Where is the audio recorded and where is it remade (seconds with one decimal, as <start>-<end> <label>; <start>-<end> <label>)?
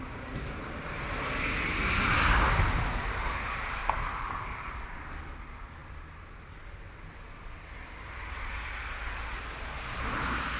0.0-0.6 recorded; 0.6-1.2 remade; 1.2-3.8 recorded; 3.8-4.8 remade; 4.8-5.8 recorded; 5.8-9.4 remade; 9.4-10.6 recorded